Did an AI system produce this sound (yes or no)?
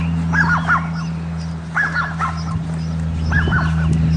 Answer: no